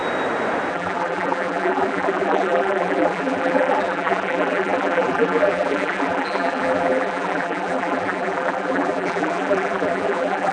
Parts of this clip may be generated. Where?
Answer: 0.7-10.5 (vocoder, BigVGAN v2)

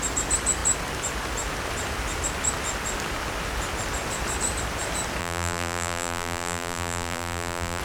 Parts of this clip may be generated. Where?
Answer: 5.2-7.8 (vocoder, BigVGAN v2)

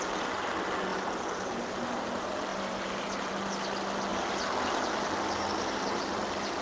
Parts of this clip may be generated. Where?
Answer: 2.5-3.3 (vocoder, BigVGAN v2)

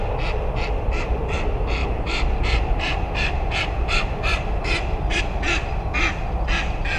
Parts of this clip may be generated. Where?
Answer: 1.8-5.2 (vocoder, BigVGAN v2)

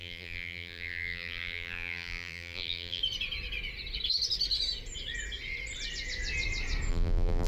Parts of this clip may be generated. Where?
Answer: 0.0-3.0 (vocoder, BigVGAN v2); 6.9-7.5

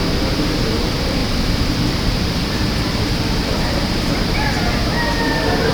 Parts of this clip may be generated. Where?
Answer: 0.0-4.8 (vocoder, BigVGAN v2)

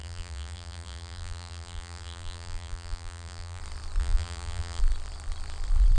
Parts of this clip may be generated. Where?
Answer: 0.0-3.6 (vocoder, BigVGAN v2); 4.0-4.8